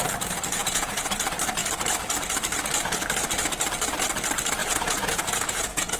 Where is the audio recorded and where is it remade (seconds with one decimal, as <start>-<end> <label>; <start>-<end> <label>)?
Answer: 0.0-0.6 recorded; 0.6-1.1 remade; 1.1-4.6 recorded; 4.6-6.0 remade

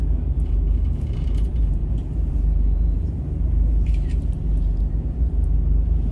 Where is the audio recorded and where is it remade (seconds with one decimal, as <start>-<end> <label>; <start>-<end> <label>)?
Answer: 0.0-6.1 remade

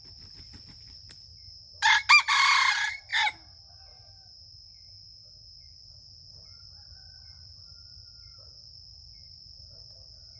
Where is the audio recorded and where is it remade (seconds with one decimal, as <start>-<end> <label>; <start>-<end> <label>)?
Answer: 0.0-1.3 remade; 1.3-2.3 recorded; 2.3-3.1 remade; 3.1-5.6 recorded; 5.6-10.4 remade

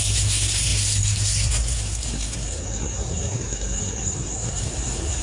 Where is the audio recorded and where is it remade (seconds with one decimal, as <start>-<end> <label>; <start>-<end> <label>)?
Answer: 0.0-5.2 remade

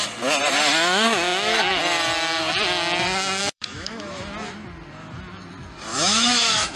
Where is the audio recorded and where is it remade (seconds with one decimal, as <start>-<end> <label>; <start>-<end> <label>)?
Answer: 0.0-3.4 recorded; 3.4-4.2 remade; 4.2-5.9 recorded; 5.9-6.8 remade

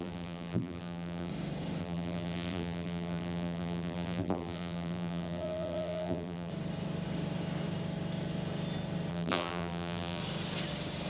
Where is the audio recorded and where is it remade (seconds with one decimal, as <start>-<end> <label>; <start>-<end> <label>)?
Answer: 0.0-1.3 remade; 1.3-1.8 recorded; 1.8-6.5 remade; 6.5-9.1 recorded; 9.1-10.2 remade; 10.2-11.1 recorded